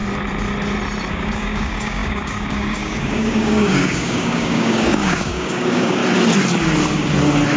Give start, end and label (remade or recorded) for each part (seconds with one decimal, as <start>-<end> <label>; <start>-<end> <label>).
0.0-1.1 recorded; 1.1-6.0 remade; 6.0-7.6 recorded